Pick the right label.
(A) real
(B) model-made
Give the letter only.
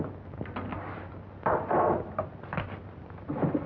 A